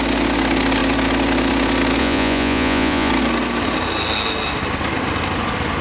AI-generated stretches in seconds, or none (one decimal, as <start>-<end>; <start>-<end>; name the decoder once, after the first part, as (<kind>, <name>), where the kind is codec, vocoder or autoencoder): 2.0-3.1 (vocoder, Vocos)